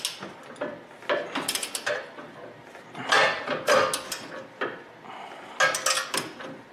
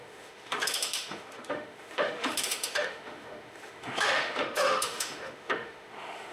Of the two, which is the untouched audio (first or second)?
first